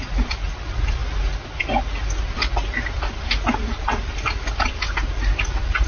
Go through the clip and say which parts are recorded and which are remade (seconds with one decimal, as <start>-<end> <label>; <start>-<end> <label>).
0.0-5.9 recorded